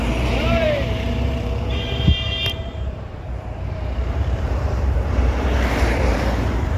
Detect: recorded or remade remade